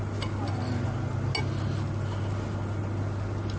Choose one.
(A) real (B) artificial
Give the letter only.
A